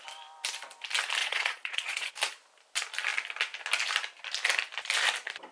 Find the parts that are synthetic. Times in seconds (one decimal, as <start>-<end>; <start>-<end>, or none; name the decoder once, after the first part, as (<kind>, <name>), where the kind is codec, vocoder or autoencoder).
1.2-2.1 (vocoder, Vocos)